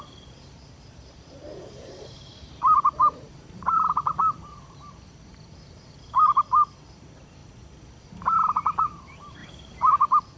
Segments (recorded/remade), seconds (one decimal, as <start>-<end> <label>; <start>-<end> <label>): 0.0-7.4 remade; 7.4-8.8 recorded; 8.8-10.4 remade